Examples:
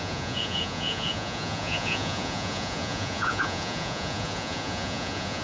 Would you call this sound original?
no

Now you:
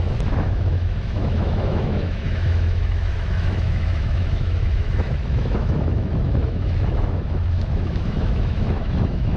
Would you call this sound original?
no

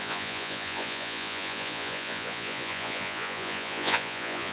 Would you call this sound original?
no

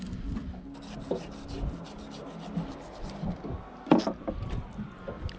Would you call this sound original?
yes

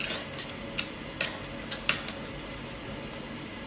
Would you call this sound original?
yes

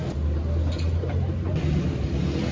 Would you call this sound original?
yes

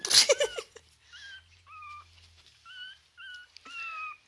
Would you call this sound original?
yes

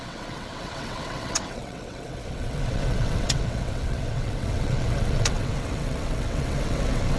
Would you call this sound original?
no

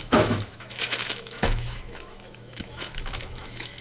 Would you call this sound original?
no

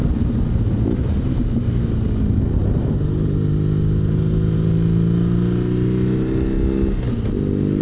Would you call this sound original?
yes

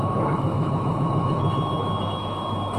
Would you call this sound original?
no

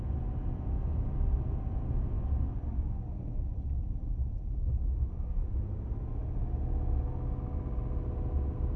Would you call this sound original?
yes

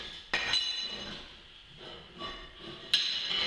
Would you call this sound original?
yes